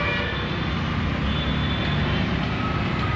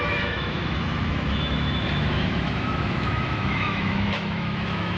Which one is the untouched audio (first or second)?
first